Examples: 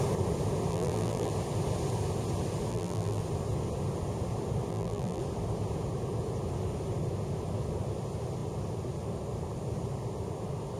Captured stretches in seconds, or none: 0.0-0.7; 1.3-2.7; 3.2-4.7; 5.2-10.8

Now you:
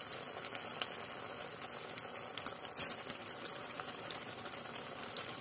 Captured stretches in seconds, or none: 0.0-3.2

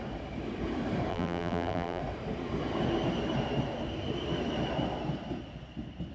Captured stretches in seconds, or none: 0.0-1.1; 2.0-6.1

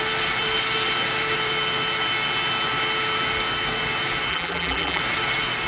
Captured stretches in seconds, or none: 0.0-4.3; 5.0-5.7

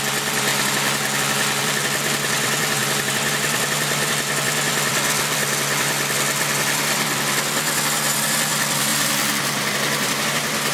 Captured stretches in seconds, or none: 0.5-1.6